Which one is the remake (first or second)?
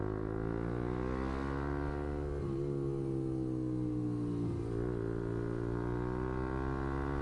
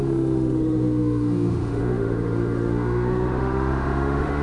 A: second